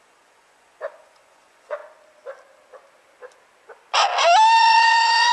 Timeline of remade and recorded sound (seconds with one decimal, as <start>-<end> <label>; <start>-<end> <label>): 0.0-1.8 remade; 1.8-4.6 recorded; 4.6-5.3 remade